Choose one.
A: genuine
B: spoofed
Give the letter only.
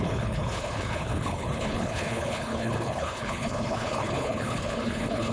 B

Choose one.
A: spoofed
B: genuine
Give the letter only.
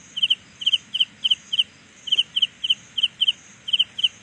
B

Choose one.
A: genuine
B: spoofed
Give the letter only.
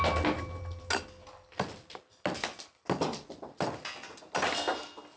A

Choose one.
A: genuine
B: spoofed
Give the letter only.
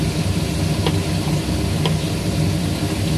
A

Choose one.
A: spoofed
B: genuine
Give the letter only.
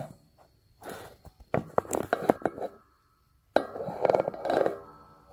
B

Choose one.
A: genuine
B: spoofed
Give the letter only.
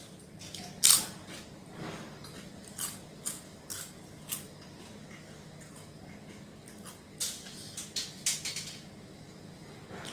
A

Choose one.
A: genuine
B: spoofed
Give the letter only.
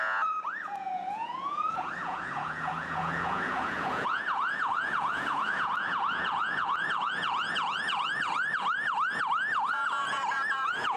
B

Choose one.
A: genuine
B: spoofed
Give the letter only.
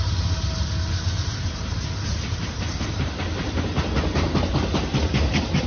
A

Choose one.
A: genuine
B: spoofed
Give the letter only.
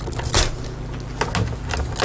A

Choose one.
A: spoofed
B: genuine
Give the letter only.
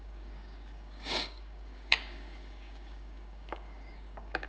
A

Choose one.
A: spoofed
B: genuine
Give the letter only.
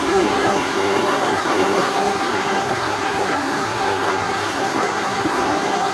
A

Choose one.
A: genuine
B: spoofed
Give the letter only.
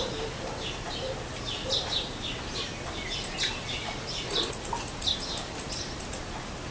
A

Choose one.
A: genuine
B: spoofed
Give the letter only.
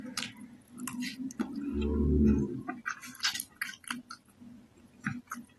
A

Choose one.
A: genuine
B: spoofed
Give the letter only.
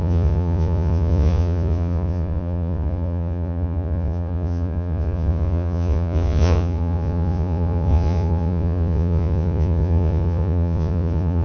B